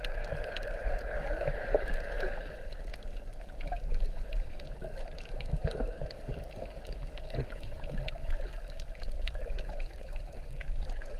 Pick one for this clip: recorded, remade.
remade